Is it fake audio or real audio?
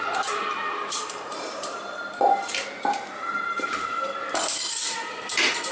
fake